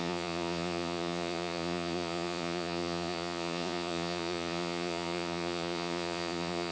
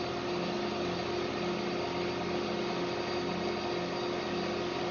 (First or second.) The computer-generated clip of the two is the first